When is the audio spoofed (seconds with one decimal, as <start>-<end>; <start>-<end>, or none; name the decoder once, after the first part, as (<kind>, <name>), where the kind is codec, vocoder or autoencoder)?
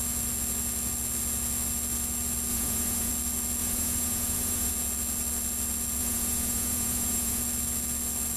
2.5-3.1 (vocoder, Vocos); 3.6-4.7; 6.0-7.4